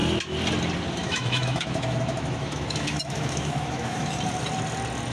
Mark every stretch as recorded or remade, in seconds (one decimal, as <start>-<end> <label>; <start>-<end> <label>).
0.0-1.0 recorded; 1.0-4.1 remade; 4.1-5.1 recorded